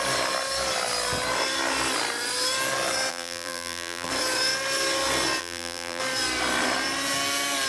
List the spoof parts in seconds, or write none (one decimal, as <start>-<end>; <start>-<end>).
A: 3.1-4.1; 5.4-6.0